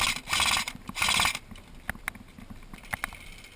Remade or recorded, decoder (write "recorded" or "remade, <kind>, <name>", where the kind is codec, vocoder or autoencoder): recorded